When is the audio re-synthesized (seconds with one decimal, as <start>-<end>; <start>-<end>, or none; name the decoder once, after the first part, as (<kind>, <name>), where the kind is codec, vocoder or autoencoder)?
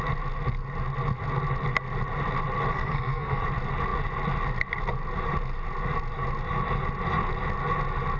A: 2.7-3.4 (codec, SNAC)